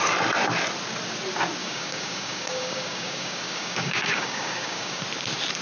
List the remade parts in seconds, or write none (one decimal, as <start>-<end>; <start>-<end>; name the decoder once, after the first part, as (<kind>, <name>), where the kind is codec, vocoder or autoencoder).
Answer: 1.6-5.0 (codec, DAC)